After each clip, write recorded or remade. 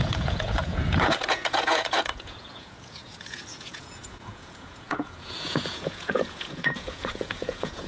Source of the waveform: remade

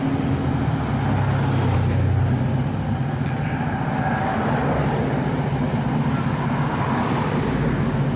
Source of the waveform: recorded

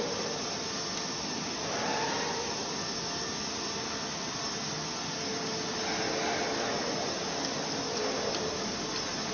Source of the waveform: recorded